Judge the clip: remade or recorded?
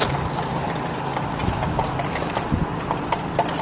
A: recorded